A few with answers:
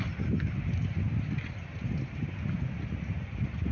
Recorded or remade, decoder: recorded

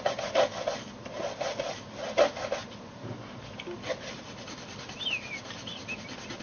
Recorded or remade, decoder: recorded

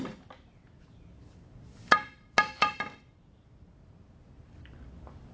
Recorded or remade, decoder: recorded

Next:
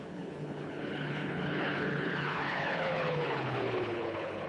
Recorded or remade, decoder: remade, codec, HILCodec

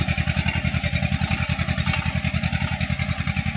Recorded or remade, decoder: recorded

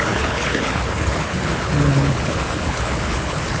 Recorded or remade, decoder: remade, codec, HILCodec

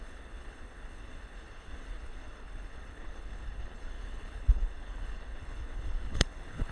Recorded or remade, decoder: remade, codec, HILCodec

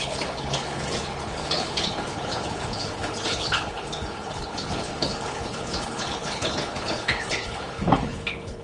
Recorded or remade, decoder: remade, codec, HILCodec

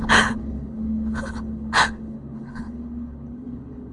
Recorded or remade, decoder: remade, codec, HILCodec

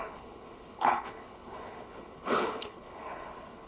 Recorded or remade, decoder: remade, codec, HILCodec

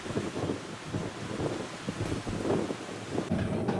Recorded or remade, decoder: recorded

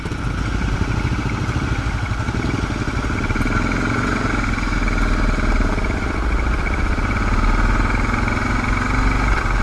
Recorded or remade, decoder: recorded